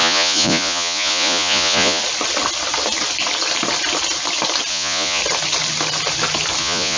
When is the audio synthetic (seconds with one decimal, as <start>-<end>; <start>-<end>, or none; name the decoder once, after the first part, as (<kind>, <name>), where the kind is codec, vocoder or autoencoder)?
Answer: 0.0-2.0 (vocoder, Vocos); 4.7-5.2; 6.6-7.0